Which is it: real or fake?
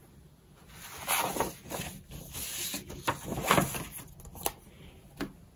real